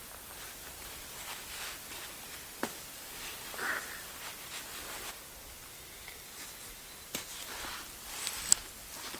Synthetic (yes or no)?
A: no